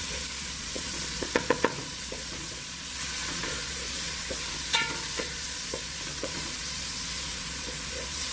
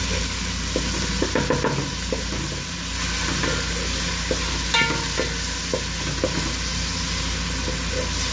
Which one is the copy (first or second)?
first